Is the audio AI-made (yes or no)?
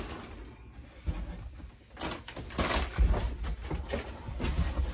no